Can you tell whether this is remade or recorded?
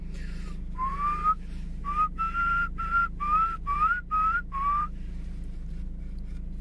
remade